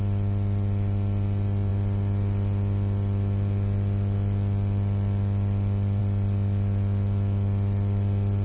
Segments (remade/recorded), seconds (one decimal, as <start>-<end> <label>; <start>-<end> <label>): 0.0-8.4 recorded